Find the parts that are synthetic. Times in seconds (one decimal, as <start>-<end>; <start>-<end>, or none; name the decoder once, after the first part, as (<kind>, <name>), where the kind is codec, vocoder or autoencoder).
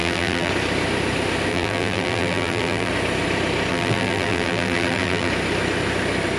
0.0-0.5 (vocoder, BigVGAN v2); 1.5-2.9; 3.7-5.3